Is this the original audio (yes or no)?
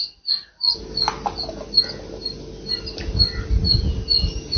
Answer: yes